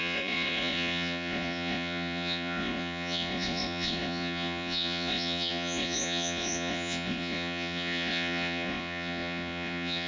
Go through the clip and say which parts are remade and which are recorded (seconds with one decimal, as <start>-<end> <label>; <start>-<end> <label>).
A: 0.0-10.1 remade